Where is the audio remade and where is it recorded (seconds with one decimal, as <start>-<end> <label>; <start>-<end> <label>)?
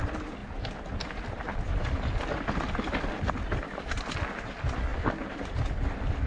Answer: 0.0-6.3 recorded